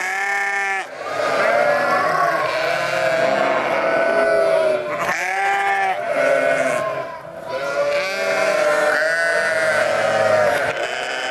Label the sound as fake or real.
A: real